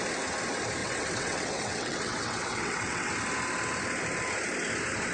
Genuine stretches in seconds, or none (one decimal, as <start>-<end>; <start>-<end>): 0.0-0.8; 3.1-5.1